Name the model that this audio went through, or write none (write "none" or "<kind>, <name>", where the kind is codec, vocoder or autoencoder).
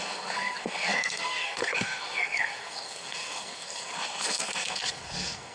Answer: codec, SNAC